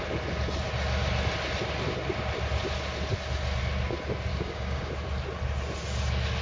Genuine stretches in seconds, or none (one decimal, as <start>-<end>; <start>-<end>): 0.0-4.3; 4.9-6.4